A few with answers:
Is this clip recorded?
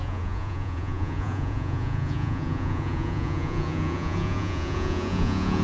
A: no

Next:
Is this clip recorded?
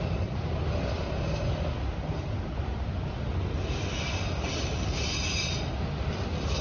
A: yes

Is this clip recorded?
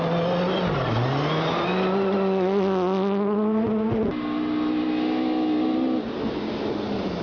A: yes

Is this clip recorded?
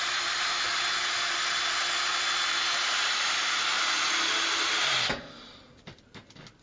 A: yes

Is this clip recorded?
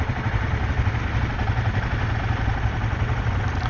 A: yes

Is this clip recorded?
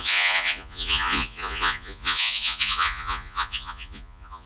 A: no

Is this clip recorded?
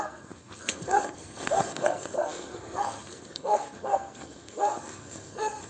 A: no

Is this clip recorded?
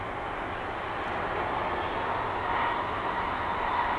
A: yes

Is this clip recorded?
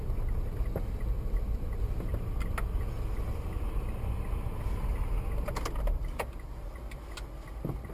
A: yes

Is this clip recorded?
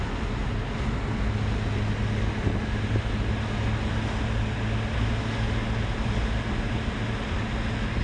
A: yes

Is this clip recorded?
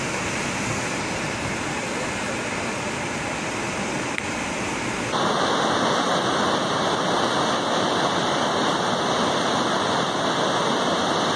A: yes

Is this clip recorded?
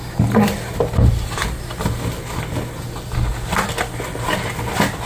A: yes